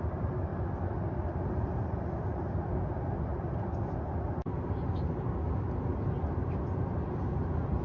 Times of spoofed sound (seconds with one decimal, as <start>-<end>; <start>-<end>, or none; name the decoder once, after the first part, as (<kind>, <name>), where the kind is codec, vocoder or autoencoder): 0.0-0.5 (vocoder, BigVGAN v2); 1.2-3.3; 6.8-7.8